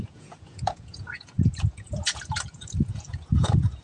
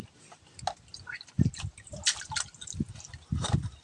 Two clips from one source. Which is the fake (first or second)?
first